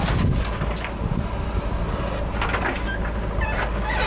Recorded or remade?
recorded